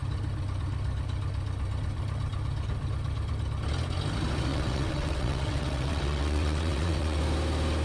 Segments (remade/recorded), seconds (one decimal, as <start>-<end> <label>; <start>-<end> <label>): 0.0-4.5 recorded; 4.5-7.2 remade; 7.2-7.8 recorded